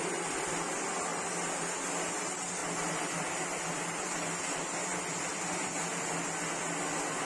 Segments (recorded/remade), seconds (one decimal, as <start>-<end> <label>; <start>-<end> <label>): 0.0-7.2 recorded